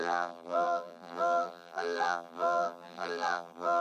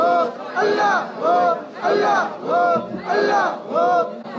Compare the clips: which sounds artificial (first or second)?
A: first